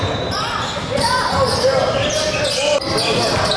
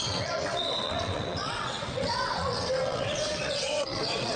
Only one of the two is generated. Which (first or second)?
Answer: second